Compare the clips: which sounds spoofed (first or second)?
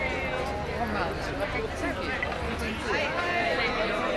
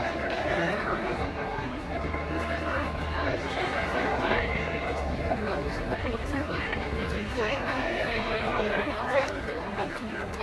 second